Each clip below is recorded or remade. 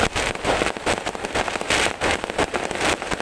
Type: recorded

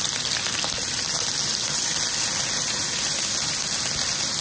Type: recorded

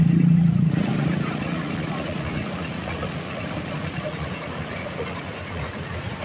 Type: remade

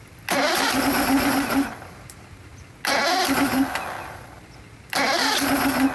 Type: recorded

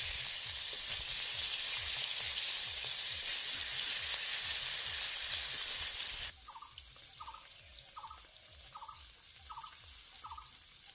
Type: recorded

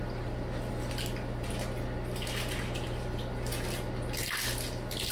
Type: recorded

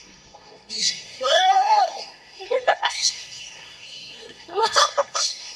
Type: remade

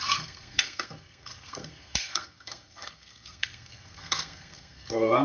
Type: remade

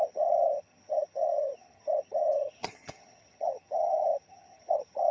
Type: remade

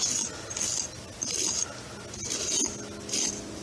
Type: recorded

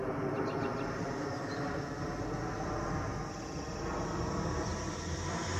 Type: recorded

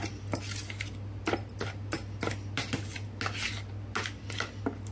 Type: recorded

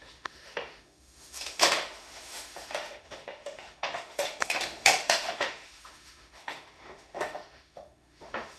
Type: remade